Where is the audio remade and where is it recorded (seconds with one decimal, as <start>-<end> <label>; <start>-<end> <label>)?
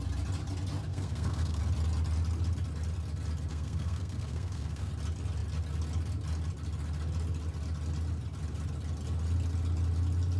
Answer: 0.0-0.9 recorded; 0.9-1.6 remade; 1.6-3.5 recorded; 3.5-4.9 remade; 4.9-10.4 recorded